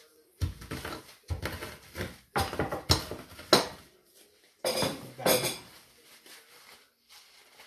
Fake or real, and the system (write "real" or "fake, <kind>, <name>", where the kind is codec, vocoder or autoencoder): real